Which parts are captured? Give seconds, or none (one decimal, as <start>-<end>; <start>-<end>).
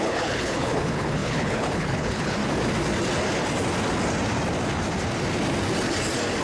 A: 2.4-6.4